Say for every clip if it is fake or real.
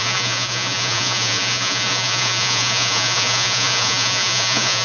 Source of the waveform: fake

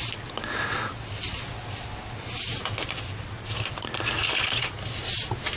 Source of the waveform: real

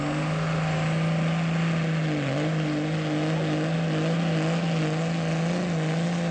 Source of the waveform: real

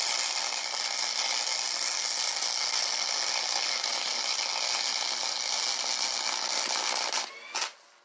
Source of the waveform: real